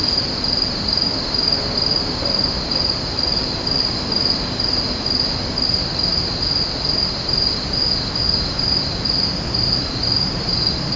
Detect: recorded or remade recorded